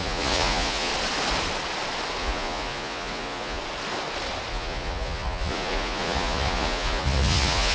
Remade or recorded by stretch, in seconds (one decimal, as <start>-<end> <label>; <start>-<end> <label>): 0.0-0.9 remade; 0.9-2.2 recorded; 2.2-3.6 remade; 3.6-4.5 recorded; 4.5-7.7 remade